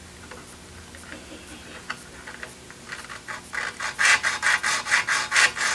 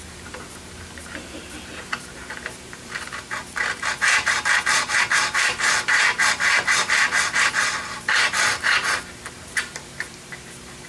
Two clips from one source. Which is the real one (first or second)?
first